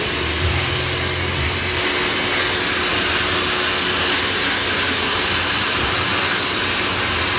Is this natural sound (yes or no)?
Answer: yes